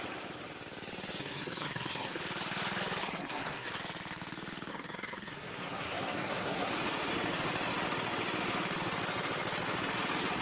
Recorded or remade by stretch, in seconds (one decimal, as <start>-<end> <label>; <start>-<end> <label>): 0.0-1.2 recorded; 1.2-2.2 remade; 2.2-3.0 recorded; 3.0-3.7 remade; 3.7-4.7 recorded; 4.7-6.7 remade; 6.7-10.4 recorded